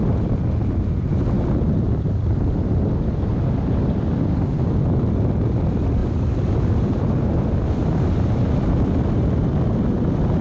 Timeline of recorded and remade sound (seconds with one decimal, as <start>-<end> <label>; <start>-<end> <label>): 0.0-10.4 recorded